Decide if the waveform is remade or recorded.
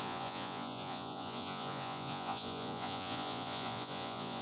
remade